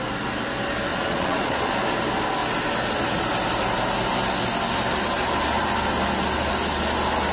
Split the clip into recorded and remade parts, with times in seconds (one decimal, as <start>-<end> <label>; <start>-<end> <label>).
0.0-0.9 recorded; 0.9-1.7 remade; 1.7-7.3 recorded